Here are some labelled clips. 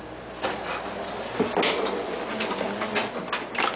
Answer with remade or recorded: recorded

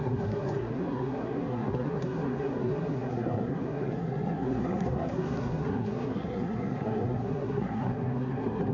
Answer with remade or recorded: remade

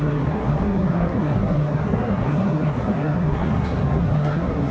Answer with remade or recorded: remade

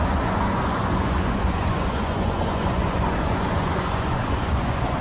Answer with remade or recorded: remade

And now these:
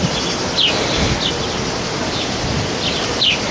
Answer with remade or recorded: recorded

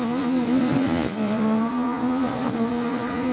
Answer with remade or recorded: remade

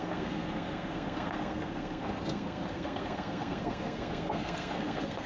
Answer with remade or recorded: remade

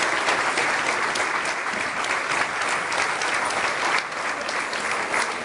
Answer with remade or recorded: recorded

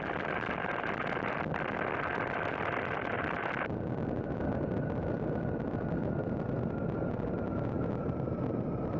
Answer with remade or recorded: recorded